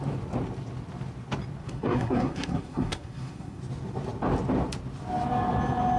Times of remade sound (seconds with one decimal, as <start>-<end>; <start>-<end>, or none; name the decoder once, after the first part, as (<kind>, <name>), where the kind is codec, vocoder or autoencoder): 1.6-3.6 (codec, SNAC)